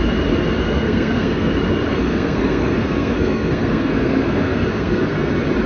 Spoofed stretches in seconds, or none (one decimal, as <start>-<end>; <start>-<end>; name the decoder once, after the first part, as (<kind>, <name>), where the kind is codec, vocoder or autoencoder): 0.6-1.5 (codec, SNAC); 1.9-5.3